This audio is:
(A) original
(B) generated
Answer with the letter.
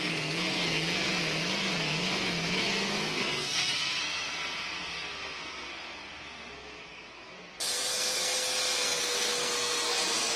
B